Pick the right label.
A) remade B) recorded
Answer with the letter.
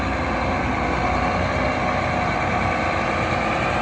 B